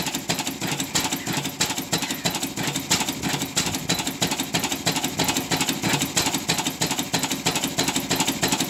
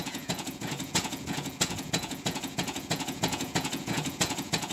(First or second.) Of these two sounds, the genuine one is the first